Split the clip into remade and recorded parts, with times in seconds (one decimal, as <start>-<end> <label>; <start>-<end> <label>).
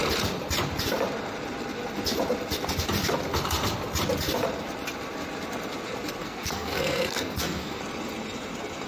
0.0-6.2 recorded; 6.2-7.8 remade; 7.8-8.9 recorded